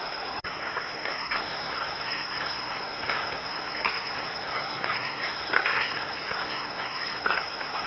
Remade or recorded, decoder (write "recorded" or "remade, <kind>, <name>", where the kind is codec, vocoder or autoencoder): remade, codec, SNAC